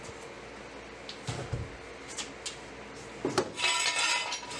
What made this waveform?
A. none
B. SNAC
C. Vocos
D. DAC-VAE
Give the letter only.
A